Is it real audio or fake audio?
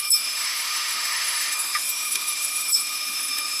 fake